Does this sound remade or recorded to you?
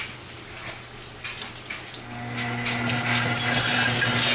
recorded